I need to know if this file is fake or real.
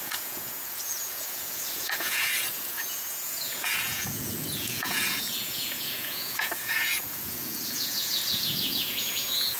fake